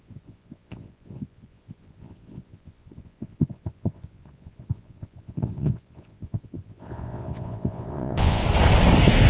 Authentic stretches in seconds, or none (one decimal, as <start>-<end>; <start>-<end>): 8.4-9.3